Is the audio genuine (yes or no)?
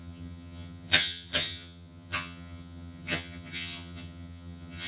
no